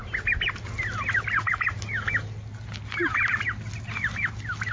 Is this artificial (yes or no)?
no